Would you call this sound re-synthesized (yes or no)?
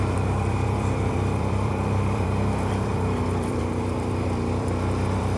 yes